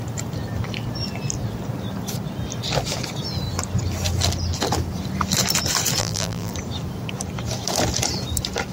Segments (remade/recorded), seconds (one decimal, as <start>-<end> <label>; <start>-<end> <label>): 0.0-6.0 recorded; 6.0-6.5 remade; 6.5-8.7 recorded